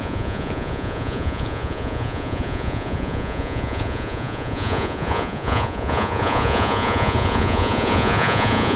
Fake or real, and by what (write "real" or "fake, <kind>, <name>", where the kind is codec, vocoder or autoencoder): fake, vocoder, Vocos